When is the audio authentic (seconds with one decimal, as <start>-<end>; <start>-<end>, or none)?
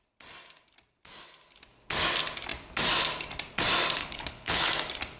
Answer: 0.0-4.0; 4.7-5.2